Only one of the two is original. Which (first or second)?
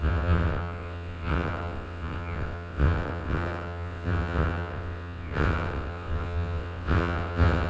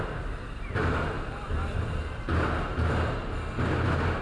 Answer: second